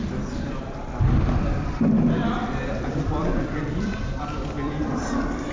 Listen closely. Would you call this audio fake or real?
fake